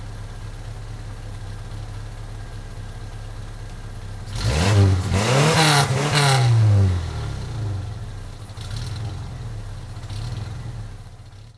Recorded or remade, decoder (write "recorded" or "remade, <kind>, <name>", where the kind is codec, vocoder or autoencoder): recorded